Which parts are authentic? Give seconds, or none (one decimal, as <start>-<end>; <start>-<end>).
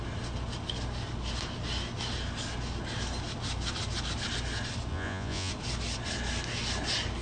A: 0.0-4.9; 5.5-7.2